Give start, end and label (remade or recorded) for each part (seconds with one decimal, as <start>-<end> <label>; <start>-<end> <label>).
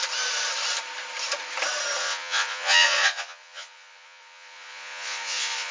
0.0-2.0 recorded; 2.0-5.7 remade